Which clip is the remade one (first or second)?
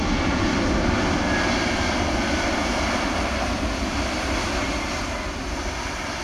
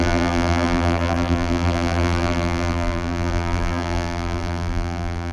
second